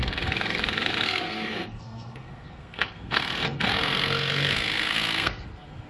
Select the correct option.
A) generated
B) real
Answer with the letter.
A